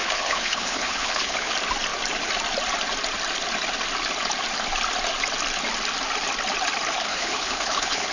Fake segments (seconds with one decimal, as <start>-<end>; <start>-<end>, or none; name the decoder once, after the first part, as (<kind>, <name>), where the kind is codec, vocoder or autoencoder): 0.0-1.5 (codec, HILCodec); 7.1-8.1